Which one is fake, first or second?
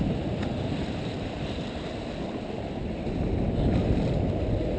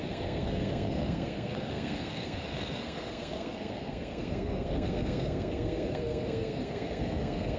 second